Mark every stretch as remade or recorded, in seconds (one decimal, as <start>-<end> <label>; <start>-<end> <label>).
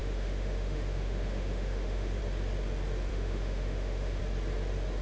0.0-2.2 remade; 2.2-3.1 recorded; 3.1-4.2 remade; 4.2-5.0 recorded